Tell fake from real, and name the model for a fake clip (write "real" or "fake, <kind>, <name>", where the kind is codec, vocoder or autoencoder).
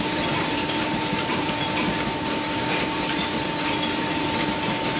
fake, vocoder, BigVGAN v2